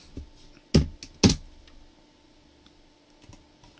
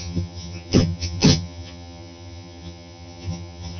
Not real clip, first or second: second